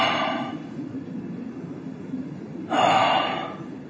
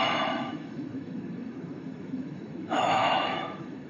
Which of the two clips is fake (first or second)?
second